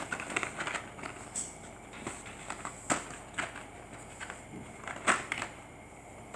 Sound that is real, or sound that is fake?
real